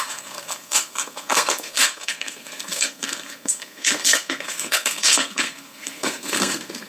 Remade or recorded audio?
remade